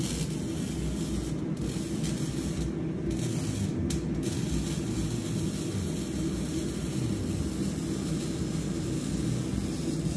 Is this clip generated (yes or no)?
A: no